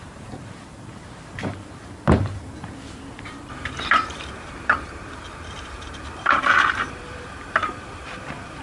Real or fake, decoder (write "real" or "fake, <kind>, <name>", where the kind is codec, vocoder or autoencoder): fake, vocoder, BigVGAN v2